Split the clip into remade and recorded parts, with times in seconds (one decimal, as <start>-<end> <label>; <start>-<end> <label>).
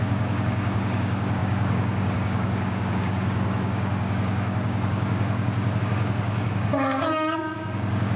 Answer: 0.0-8.2 remade